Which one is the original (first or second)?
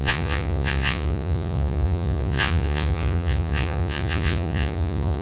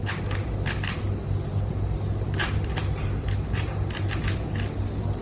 second